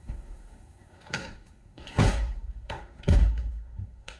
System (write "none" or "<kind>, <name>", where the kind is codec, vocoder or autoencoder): codec, SNAC